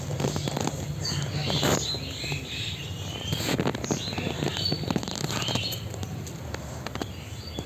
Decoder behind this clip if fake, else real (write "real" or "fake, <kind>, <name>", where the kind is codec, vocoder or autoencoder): real